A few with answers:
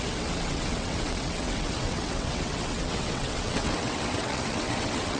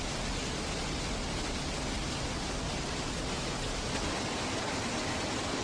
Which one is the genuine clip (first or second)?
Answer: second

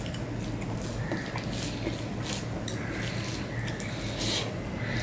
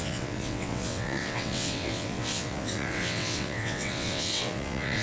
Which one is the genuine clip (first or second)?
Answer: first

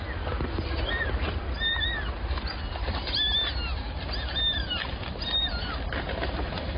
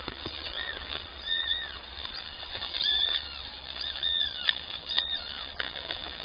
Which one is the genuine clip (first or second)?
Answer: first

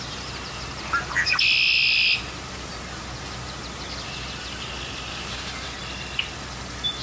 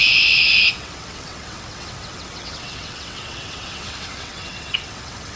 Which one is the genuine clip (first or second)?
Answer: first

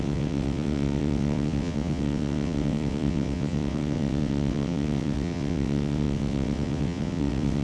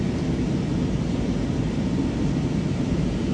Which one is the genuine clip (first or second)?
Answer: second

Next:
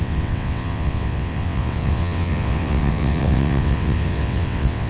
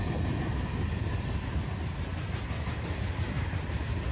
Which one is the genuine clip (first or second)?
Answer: second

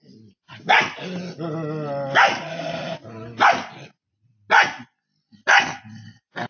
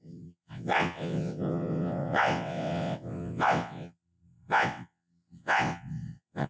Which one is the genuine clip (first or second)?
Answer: first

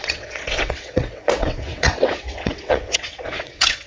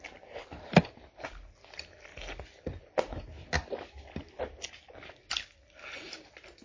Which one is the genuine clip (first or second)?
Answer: second